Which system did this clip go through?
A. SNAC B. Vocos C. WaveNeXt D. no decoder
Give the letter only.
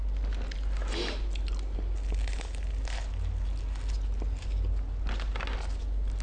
D